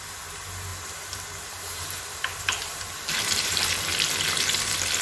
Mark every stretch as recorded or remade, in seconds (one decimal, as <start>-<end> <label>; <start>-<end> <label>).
0.0-0.7 recorded; 0.7-3.7 remade; 3.7-5.0 recorded